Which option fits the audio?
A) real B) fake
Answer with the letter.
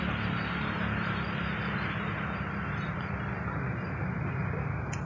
A